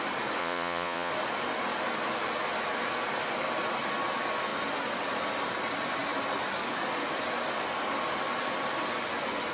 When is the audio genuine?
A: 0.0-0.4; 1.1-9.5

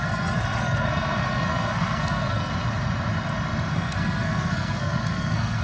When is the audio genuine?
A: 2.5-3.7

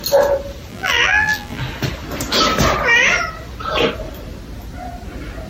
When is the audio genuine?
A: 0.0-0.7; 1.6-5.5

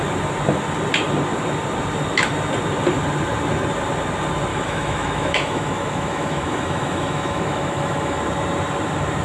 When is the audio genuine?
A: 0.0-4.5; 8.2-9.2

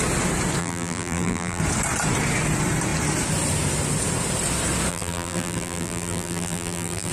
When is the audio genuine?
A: 0.0-0.6; 1.6-4.9

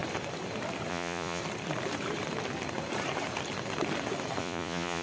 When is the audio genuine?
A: 0.0-0.9; 1.4-4.4